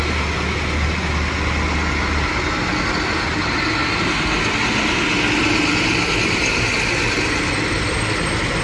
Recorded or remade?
recorded